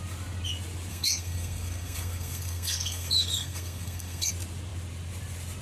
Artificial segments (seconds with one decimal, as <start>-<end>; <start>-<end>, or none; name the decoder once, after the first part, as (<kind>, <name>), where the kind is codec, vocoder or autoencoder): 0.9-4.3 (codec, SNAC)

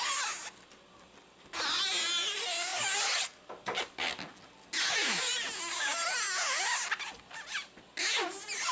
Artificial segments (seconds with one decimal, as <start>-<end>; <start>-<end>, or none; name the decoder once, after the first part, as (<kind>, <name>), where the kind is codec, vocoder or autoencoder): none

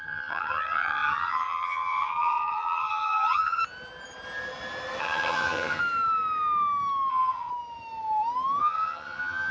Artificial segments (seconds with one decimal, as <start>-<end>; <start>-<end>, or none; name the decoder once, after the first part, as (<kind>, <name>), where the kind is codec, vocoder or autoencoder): 0.0-3.6 (vocoder, HiFi-GAN); 5.0-5.8; 7.1-7.5; 8.6-9.5

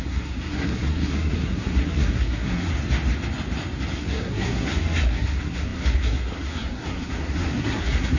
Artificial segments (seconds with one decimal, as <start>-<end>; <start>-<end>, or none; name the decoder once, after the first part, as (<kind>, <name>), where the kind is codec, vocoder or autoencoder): 0.0-2.7 (codec, SNAC); 3.9-8.2

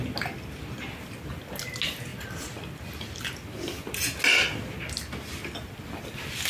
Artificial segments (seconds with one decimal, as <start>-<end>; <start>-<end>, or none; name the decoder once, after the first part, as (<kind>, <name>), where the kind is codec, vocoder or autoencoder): none

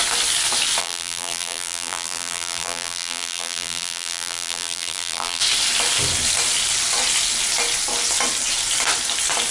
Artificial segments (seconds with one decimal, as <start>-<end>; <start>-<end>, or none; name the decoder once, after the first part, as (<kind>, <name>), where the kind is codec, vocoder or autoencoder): 0.8-5.4 (vocoder, BigVGAN v2)

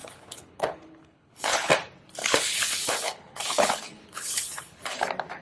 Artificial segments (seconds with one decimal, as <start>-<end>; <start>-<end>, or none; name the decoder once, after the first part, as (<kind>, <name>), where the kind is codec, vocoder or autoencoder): 0.0-1.7 (codec, HILCodec); 2.2-5.0

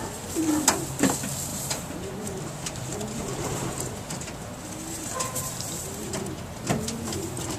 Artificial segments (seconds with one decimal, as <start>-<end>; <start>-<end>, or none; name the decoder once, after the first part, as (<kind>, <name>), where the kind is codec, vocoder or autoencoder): 1.5-6.1 (vocoder, BigVGAN v2)